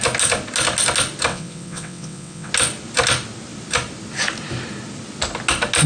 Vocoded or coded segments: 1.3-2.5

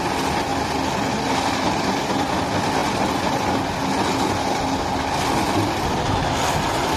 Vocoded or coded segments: 0.5-2.1

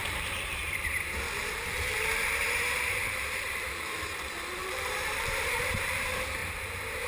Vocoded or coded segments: 0.0-1.0; 1.4-3.6; 4.6-5.8; 6.4-7.1

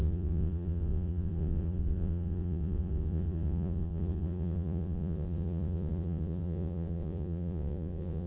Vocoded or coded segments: 0.0-8.3